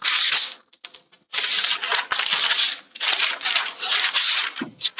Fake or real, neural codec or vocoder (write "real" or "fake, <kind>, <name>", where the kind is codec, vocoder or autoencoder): real